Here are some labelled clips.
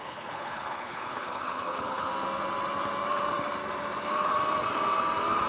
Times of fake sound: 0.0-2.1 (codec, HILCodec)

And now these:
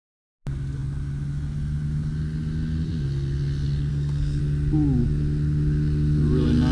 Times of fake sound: 3.9-4.4 (codec, SNAC)

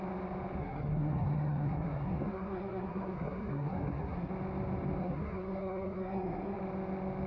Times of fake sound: 0.6-4.3 (codec, SNAC); 5.0-6.6

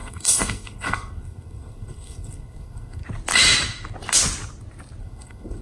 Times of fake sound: 0.0-3.0 (codec, SNAC); 5.0-5.6

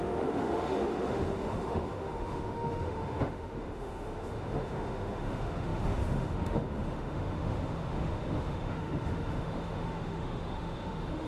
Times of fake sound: 0.0-11.3 (autoencoder, DAC-VAE)

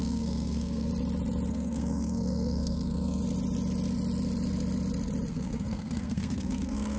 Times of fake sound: 0.0-0.9 (codec, SNAC); 1.5-3.2; 5.3-7.0